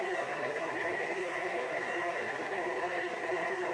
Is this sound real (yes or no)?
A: no